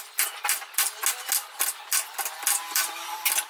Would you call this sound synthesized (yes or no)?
no